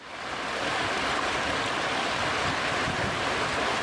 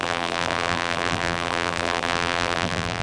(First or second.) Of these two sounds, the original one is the first